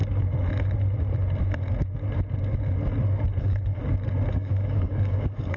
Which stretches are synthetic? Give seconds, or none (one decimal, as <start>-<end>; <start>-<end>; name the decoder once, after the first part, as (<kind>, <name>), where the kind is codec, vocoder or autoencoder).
3.4-3.8 (codec, DAC); 4.3-5.6